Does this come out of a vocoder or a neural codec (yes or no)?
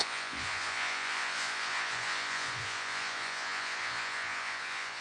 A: yes